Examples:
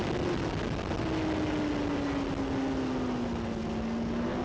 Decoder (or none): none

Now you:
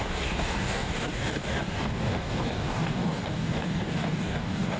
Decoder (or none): codec, DAC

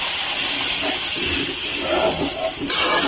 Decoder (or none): none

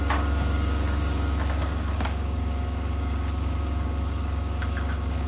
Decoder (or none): codec, DAC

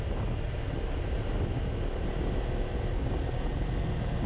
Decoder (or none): none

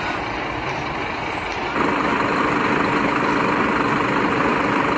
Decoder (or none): none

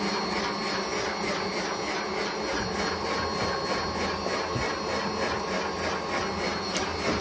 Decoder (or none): none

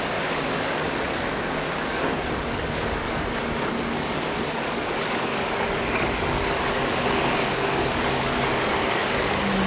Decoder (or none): codec, DAC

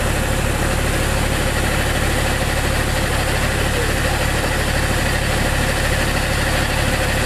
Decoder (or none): none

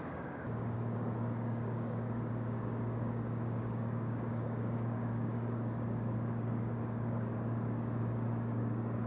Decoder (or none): codec, DAC